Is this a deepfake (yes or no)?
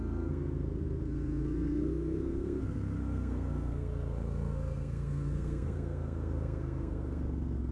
yes